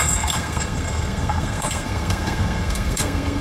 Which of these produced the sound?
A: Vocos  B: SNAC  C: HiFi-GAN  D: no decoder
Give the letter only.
B